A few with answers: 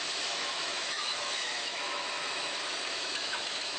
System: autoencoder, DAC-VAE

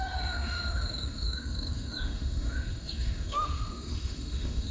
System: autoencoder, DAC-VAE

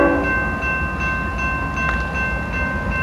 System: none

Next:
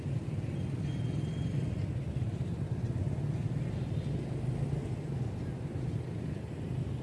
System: none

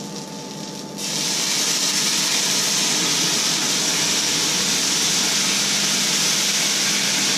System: none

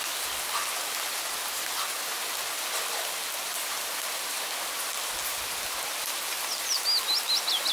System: none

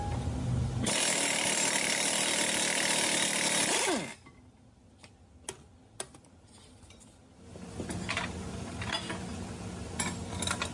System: none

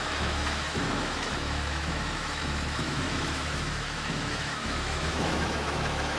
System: autoencoder, DAC-VAE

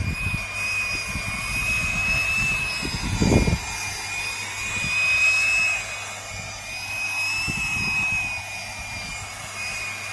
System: none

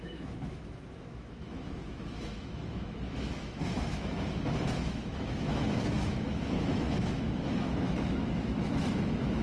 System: autoencoder, DAC-VAE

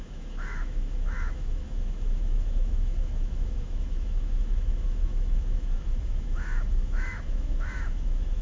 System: autoencoder, DAC-VAE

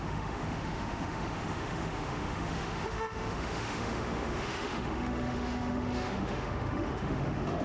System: autoencoder, DAC-VAE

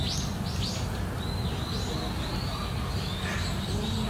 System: none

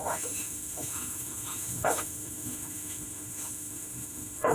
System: autoencoder, DAC-VAE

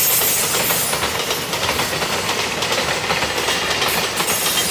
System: none